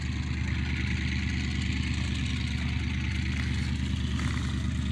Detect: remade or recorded recorded